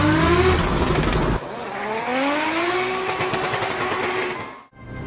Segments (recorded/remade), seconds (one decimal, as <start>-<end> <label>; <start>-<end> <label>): 0.0-5.1 recorded